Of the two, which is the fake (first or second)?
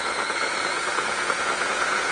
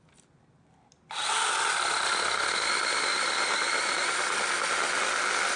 first